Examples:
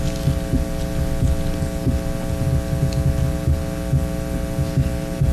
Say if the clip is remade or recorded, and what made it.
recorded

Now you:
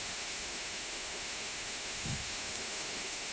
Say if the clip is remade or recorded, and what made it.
remade, autoencoder, DAC-VAE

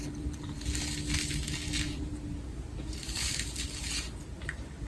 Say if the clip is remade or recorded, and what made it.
recorded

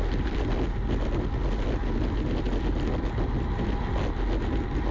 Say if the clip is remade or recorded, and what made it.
recorded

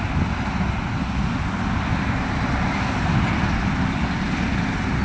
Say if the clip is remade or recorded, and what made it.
recorded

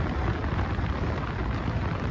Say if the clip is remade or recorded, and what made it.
recorded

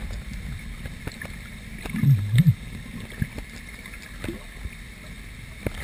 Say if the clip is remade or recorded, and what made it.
recorded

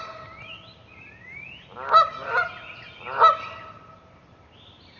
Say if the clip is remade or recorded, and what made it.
recorded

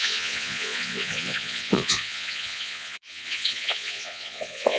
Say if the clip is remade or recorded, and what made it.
remade, vocoder, Vocos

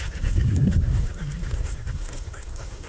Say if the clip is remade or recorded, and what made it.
remade, codec, SNAC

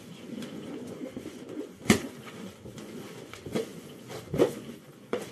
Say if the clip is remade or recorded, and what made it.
remade, vocoder, Vocos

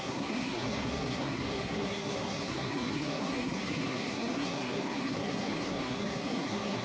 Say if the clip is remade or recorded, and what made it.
remade, codec, SNAC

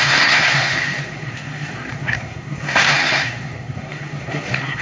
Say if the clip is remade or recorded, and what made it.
remade, codec, SNAC